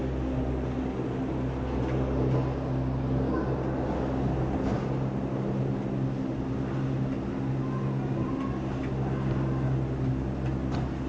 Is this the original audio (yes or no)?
yes